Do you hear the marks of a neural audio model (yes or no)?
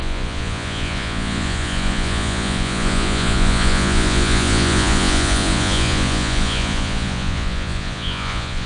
yes